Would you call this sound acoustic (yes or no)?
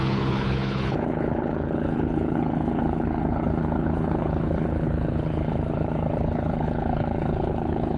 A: no